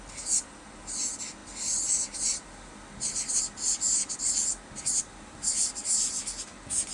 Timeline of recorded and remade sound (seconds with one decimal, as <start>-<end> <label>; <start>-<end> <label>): 0.0-4.9 recorded; 4.9-5.8 remade; 5.8-6.9 recorded